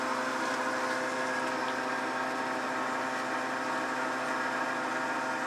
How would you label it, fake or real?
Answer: real